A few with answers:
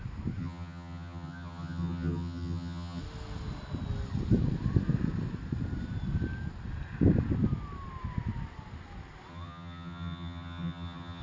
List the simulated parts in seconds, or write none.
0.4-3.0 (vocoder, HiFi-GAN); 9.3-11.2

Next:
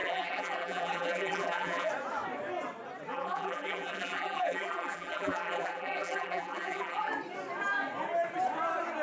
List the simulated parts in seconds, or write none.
0.0-1.9 (vocoder, BigVGAN v2); 3.1-7.1

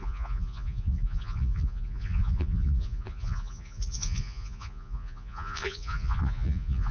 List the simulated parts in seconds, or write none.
0.0-6.9 (vocoder, Vocos)

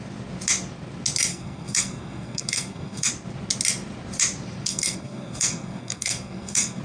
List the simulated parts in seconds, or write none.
1.3-3.1 (codec, SNAC); 4.7-6.8